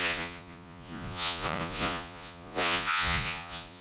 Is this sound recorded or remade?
remade